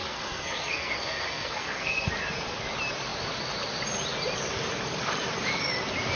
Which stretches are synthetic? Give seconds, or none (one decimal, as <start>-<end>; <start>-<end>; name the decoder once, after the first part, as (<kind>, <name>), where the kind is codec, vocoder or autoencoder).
0.0-2.1 (codec, SNAC)